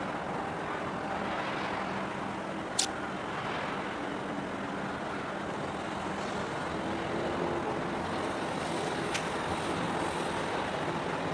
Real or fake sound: real